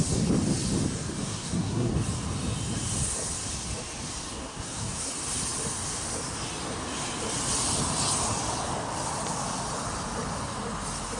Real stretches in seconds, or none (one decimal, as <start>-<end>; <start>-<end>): 0.0-1.2; 1.9-4.4; 5.1-11.2